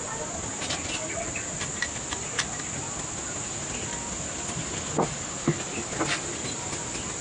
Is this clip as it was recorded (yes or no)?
yes